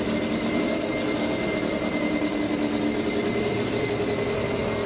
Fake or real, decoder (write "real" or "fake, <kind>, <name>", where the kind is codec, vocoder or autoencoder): real